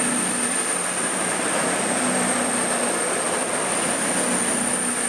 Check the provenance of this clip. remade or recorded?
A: recorded